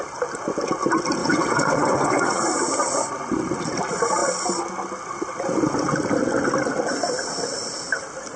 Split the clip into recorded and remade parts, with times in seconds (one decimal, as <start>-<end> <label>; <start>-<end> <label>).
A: 0.0-1.2 recorded; 1.2-2.4 remade; 2.4-8.4 recorded